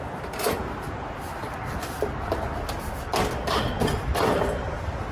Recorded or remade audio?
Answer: recorded